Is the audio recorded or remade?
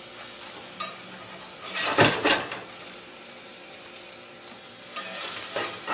recorded